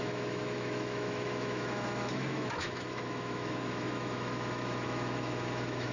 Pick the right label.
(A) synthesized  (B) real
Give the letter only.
A